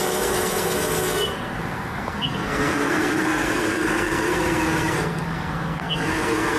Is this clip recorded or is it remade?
remade